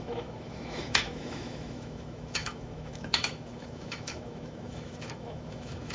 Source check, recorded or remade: remade